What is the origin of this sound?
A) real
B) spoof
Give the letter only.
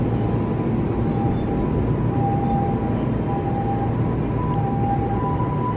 A